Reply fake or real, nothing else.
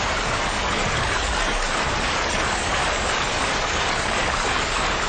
fake